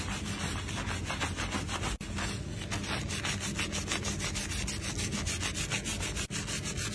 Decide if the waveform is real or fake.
real